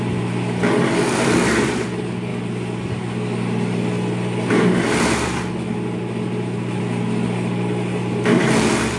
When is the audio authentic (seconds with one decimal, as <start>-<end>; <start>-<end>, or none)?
0.0-9.0